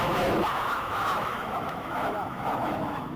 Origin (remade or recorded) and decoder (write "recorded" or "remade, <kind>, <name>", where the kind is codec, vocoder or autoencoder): remade, autoencoder, DAC-VAE